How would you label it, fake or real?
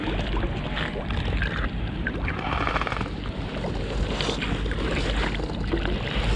real